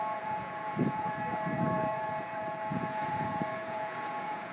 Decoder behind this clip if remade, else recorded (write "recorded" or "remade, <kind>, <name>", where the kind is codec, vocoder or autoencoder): remade, vocoder, Vocos